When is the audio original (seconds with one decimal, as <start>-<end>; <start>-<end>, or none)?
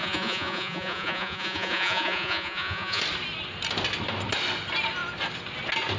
3.0-6.0